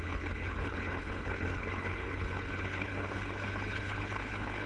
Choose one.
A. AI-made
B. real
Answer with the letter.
A